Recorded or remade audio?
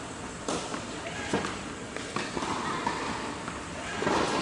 recorded